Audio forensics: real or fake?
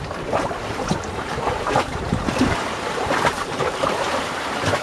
fake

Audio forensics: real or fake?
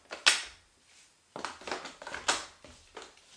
real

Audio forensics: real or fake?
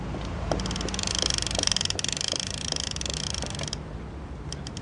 real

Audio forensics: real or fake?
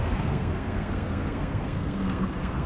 fake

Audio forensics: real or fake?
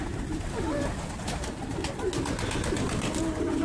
real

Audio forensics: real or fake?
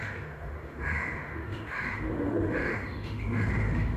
fake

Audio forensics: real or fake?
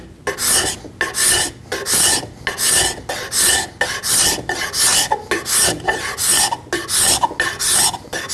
real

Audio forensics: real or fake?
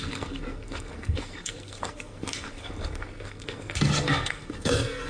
fake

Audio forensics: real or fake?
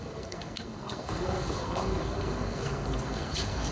fake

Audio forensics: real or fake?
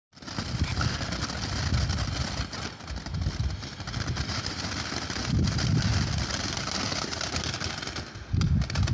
real